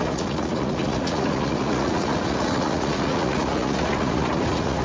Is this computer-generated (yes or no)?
yes